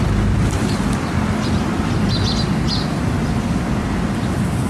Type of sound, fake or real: fake